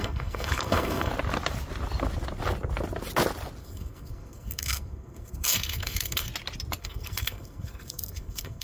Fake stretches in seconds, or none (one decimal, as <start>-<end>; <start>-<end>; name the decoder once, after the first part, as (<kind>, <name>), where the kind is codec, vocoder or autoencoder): 0.0-1.1 (codec, SNAC); 3.6-6.3; 6.8-8.6